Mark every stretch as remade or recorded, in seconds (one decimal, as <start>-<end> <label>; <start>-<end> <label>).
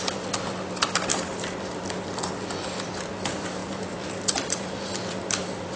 0.0-1.1 recorded; 1.1-1.8 remade; 1.8-3.6 recorded; 3.6-4.8 remade; 4.8-5.8 recorded